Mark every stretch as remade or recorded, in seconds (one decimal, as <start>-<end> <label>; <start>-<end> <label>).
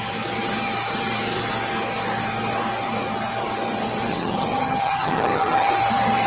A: 0.0-4.1 recorded; 4.1-5.7 remade; 5.7-6.3 recorded